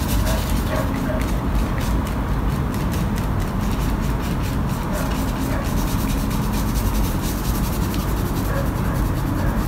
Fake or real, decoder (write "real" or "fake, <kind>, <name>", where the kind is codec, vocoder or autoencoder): real